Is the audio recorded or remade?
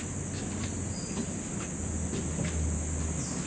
recorded